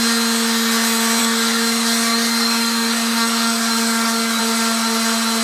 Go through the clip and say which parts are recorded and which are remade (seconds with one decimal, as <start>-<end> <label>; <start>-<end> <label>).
0.0-1.2 recorded; 1.2-4.4 remade; 4.4-5.4 recorded